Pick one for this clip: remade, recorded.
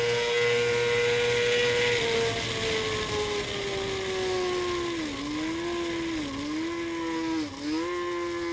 recorded